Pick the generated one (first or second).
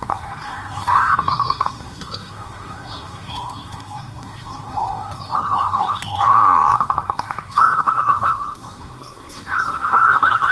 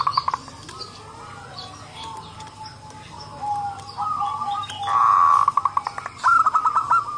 first